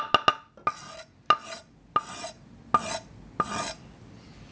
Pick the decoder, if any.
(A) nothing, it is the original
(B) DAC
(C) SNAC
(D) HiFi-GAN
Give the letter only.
A